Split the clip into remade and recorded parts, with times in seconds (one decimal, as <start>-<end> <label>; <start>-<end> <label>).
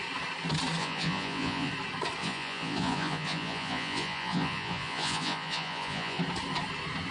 0.0-0.8 recorded; 0.8-1.7 remade; 1.7-2.2 recorded; 2.2-6.2 remade; 6.2-7.1 recorded